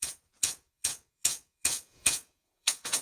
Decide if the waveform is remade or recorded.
remade